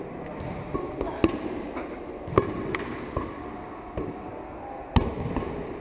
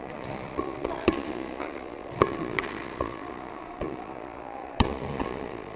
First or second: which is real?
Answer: first